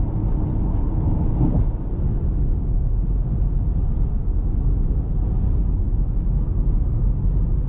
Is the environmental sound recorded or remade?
recorded